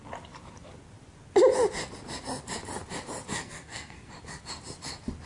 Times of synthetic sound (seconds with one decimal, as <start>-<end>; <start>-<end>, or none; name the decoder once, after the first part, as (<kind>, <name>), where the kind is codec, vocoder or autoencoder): 3.3-4.1 (codec, SNAC)